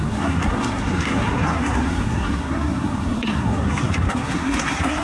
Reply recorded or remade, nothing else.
remade